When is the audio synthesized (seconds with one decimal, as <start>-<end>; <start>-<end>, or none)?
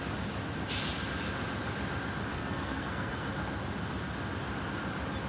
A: 2.3-3.3